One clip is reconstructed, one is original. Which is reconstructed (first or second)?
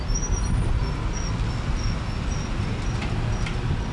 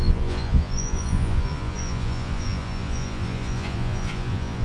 second